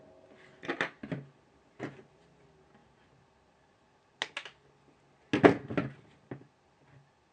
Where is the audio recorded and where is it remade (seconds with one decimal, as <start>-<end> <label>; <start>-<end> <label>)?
0.0-7.3 recorded

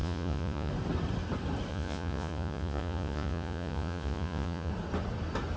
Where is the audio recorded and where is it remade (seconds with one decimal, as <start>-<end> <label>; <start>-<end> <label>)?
0.0-0.7 remade; 0.7-1.7 recorded; 1.7-4.7 remade; 4.7-5.6 recorded

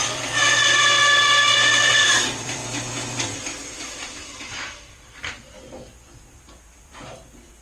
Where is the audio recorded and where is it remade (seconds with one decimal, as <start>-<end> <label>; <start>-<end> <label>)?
0.0-1.0 remade; 1.0-1.7 recorded; 1.7-2.6 remade; 2.6-3.8 recorded; 3.8-7.6 remade

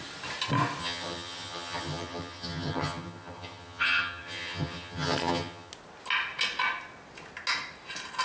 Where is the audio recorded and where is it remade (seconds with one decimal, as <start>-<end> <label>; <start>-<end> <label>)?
0.0-0.8 recorded; 0.8-5.7 remade; 5.7-8.2 recorded

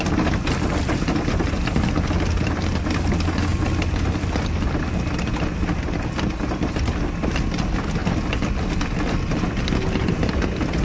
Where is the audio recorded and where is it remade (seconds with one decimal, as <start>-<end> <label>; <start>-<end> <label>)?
0.0-10.8 recorded

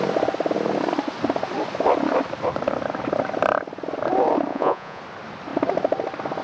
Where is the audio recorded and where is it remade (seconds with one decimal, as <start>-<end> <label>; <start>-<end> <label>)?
0.0-4.5 recorded; 4.5-5.0 remade; 5.0-6.4 recorded

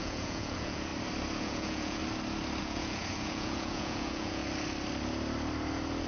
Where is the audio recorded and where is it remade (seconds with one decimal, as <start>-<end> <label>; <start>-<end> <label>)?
0.0-0.9 remade; 0.9-1.4 recorded; 1.4-2.0 remade; 2.0-2.6 recorded; 2.6-4.4 remade; 4.4-6.1 recorded